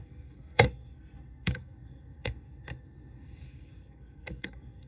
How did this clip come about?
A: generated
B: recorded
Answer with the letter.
A